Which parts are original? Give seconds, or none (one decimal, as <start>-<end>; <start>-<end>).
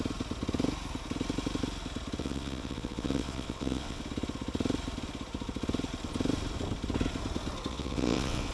0.0-2.2; 4.0-7.7